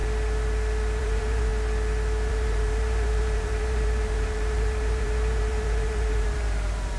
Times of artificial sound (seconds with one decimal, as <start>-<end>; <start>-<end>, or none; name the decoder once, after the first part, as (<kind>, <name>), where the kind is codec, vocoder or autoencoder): 1.0-1.5 (vocoder, BigVGAN v2); 2.3-7.0